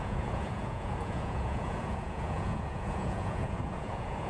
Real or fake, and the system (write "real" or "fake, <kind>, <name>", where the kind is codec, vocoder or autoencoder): fake, vocoder, Vocos